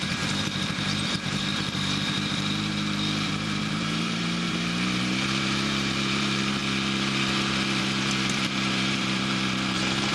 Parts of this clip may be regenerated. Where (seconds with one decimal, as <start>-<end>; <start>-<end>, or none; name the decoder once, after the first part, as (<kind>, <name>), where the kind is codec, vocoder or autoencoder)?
0.0-6.6 (vocoder, BigVGAN v2); 7.8-10.1

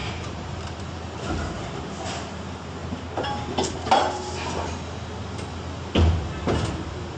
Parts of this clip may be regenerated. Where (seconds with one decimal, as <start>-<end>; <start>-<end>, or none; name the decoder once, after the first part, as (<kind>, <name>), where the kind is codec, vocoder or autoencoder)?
0.0-0.8 (vocoder, BigVGAN v2)

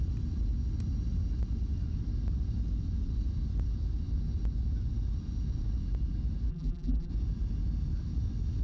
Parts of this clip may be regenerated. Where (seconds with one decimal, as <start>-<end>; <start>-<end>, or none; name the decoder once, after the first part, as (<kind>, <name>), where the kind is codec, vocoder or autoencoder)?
6.5-7.1 (vocoder, BigVGAN v2)